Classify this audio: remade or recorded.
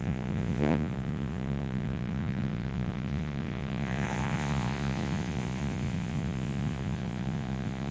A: remade